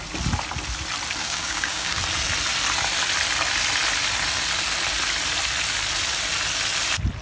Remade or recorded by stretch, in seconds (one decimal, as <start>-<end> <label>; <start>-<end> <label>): 0.0-1.2 recorded; 1.2-2.0 remade; 2.0-7.2 recorded